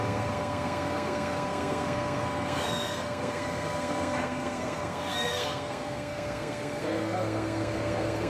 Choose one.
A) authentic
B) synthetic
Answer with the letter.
B